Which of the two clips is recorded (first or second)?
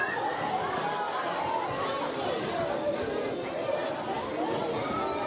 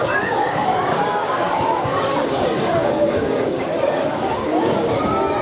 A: first